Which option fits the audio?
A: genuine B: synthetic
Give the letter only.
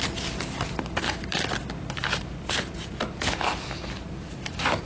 A